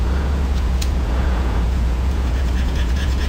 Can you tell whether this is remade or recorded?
remade